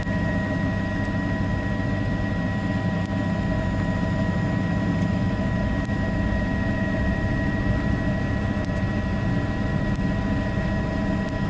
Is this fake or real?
real